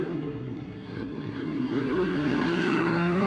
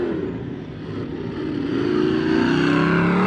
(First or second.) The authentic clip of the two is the second